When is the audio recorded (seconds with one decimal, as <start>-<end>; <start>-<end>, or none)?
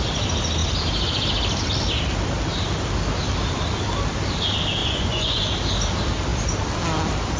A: 0.0-4.8; 5.4-7.4